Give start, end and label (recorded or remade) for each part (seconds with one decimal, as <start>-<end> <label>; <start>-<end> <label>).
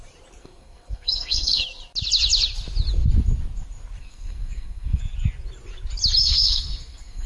0.0-0.4 recorded; 0.4-1.6 remade; 1.6-4.0 recorded; 4.0-5.0 remade; 5.0-6.2 recorded; 6.2-7.3 remade